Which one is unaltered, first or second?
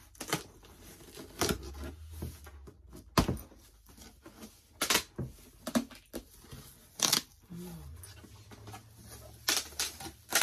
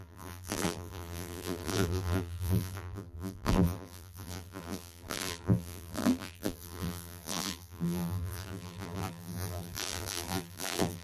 first